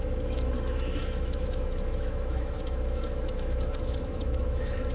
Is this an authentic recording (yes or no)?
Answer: no